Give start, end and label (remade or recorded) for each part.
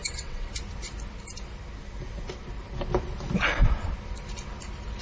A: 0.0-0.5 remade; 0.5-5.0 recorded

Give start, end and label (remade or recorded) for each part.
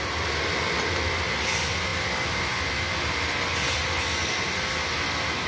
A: 0.0-5.5 recorded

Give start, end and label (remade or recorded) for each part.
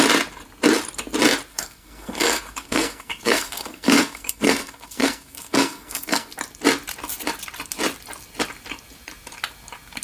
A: 0.0-1.5 recorded; 1.5-6.3 remade; 6.3-10.0 recorded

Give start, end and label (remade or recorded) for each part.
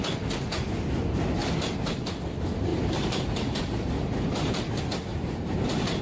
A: 0.0-1.4 recorded; 1.4-2.1 remade; 2.1-2.7 recorded; 2.7-4.8 remade; 4.8-6.0 recorded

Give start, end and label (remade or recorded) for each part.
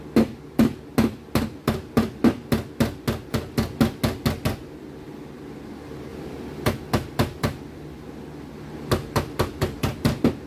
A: 0.0-6.1 recorded; 6.1-7.6 remade; 7.6-10.5 recorded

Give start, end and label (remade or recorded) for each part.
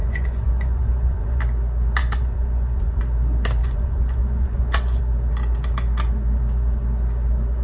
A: 0.0-1.4 remade; 1.4-2.0 recorded; 2.0-3.0 remade; 3.0-3.6 recorded; 3.6-5.0 remade; 5.0-7.6 recorded